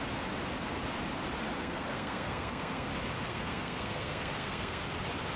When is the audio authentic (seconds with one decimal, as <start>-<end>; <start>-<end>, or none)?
0.0-1.6; 2.9-3.3; 4.8-5.4